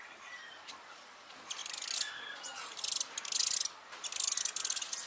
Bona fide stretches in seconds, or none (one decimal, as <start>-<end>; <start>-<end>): 0.0-5.1